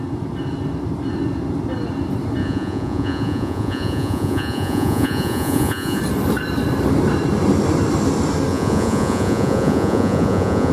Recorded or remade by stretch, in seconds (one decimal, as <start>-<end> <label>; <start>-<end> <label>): 0.0-2.4 recorded; 2.4-6.0 remade; 6.0-8.5 recorded; 8.5-10.7 remade